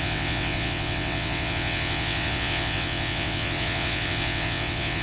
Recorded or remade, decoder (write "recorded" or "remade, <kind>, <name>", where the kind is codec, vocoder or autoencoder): remade, vocoder, WaveNeXt